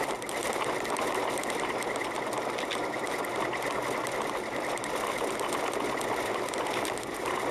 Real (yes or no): yes